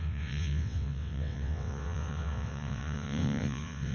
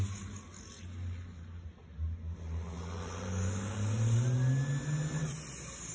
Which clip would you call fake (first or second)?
first